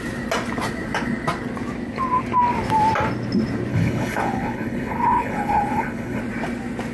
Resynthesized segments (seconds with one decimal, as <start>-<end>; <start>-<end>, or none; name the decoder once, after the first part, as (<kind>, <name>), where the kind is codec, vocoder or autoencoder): 3.7-6.2 (codec, HILCodec)